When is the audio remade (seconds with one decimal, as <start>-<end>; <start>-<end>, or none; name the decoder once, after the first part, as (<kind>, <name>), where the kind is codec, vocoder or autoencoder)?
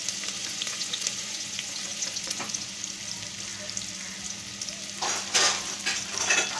0.4-2.8 (vocoder, Vocos)